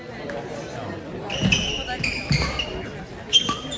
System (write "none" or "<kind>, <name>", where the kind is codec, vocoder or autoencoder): none